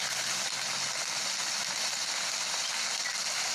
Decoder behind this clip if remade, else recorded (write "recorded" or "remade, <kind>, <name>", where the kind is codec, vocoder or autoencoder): recorded